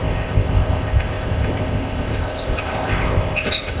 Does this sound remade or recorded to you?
remade